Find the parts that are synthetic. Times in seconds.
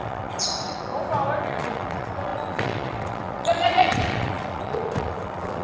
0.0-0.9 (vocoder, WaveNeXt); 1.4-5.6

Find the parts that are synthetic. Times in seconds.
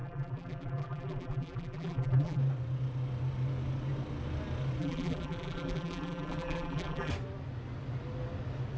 0.0-2.4 (vocoder, BigVGAN v2); 4.8-7.1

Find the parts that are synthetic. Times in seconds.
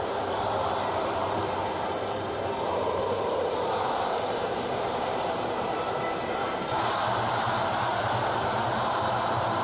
0.0-7.9 (vocoder, BigVGAN v2); 9.2-9.6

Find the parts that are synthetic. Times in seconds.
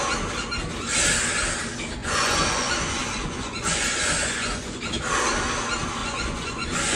2.0-4.8 (vocoder, Vocos); 6.0-7.0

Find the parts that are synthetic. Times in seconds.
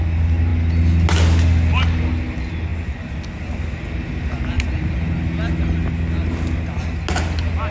none